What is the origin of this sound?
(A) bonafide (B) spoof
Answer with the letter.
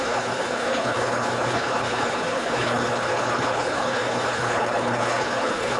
B